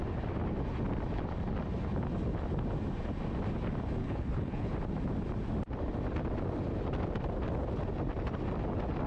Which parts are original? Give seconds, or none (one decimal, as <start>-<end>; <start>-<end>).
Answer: 0.0-4.0; 4.7-9.1